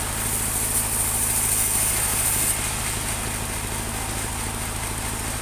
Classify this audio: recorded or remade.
recorded